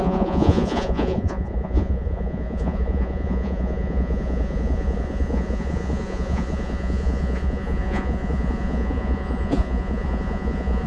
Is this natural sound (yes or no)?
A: no